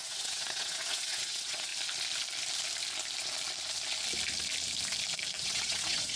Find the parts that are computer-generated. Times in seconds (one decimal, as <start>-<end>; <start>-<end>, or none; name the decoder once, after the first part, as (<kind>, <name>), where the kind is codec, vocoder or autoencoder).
0.0-1.7 (vocoder, WaveNeXt); 5.4-6.2